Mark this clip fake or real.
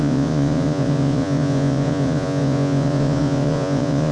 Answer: fake